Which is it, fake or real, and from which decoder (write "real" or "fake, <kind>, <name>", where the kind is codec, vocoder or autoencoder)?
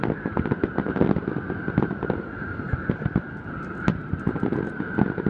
real